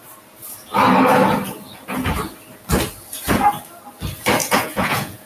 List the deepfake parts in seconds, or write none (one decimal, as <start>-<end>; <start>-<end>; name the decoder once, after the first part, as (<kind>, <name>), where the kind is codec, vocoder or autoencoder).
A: 4.4-5.3 (vocoder, Vocos)